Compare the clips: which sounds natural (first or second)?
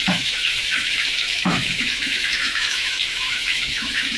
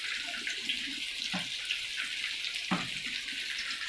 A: second